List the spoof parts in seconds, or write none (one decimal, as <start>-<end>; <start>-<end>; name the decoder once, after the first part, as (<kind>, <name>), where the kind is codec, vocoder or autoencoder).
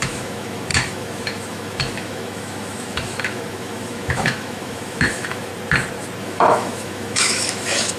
0.0-5.5 (autoencoder, DAC-VAE); 6.2-8.0